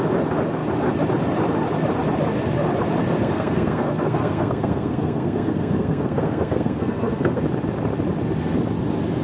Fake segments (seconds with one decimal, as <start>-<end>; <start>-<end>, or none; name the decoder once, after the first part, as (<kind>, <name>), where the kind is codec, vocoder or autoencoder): 3.2-7.4 (codec, SNAC)